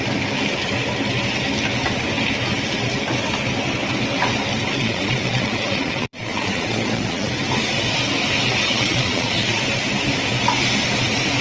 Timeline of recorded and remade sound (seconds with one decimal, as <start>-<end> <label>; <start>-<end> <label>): 0.0-4.8 recorded; 4.8-7.3 remade; 7.3-8.7 recorded; 8.7-9.6 remade; 9.6-11.4 recorded